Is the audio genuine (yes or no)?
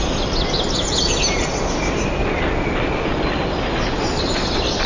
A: yes